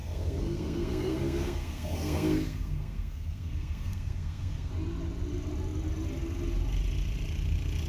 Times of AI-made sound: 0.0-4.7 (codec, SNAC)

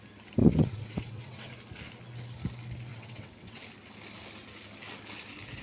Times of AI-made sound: 0.4-1.5 (vocoder, WaveNeXt); 2.9-3.6

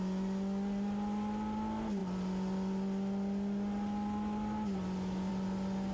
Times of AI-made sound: none